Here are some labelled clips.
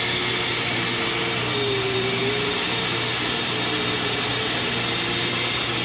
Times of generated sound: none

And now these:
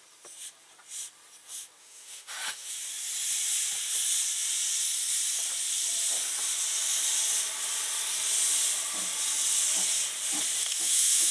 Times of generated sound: 1.8-2.7 (autoencoder, DAC-VAE); 10.6-11.3

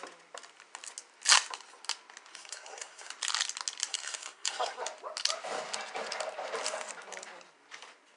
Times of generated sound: 2.3-3.1 (codec, SNAC); 3.9-4.8

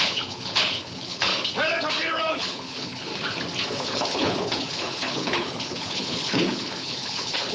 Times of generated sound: 0.0-1.3 (codec, HILCodec); 2.3-3.1; 3.7-7.5

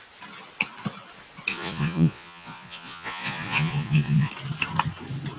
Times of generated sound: 1.5-4.3 (vocoder, Vocos)

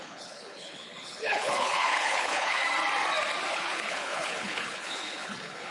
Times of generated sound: 0.0-2.6 (codec, HILCodec); 3.5-5.7

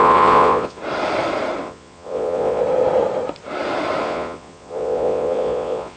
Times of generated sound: 0.0-0.8 (vocoder, Vocos); 1.6-2.6; 4.0-6.0